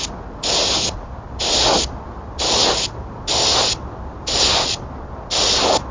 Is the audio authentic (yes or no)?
yes